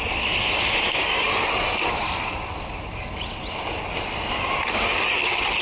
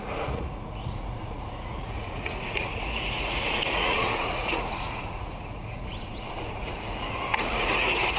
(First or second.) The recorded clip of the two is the first